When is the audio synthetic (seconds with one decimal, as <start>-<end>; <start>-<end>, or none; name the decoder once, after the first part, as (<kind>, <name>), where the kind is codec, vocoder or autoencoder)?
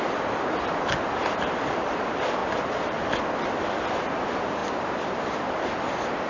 0.0-6.3 (vocoder, BigVGAN v2)